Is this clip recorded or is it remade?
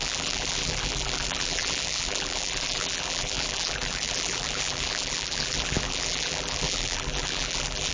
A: remade